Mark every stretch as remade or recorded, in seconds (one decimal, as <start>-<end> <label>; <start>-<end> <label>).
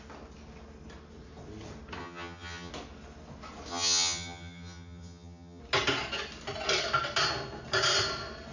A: 0.0-2.0 recorded; 2.0-2.7 remade; 2.7-3.7 recorded; 3.7-5.6 remade; 5.6-8.5 recorded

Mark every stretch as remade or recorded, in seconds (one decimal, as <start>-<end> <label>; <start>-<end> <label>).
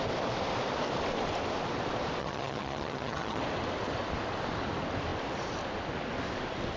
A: 0.0-2.2 recorded; 2.2-3.4 remade; 3.4-6.8 recorded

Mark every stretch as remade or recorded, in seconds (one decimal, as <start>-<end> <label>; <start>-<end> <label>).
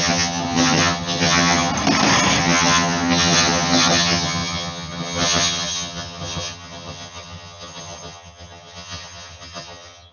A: 0.0-1.7 remade; 1.7-2.4 recorded; 2.4-10.1 remade